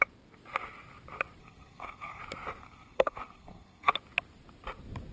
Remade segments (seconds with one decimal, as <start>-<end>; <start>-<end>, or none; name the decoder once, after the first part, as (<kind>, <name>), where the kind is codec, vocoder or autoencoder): 1.4-2.2 (codec, SNAC); 2.6-3.9